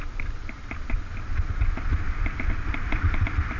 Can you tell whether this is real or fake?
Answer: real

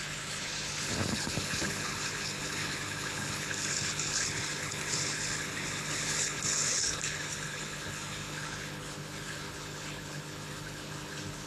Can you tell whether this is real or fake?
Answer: fake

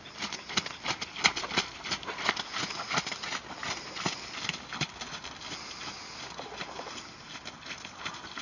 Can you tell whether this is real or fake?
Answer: real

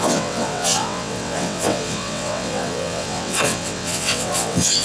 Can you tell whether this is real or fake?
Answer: fake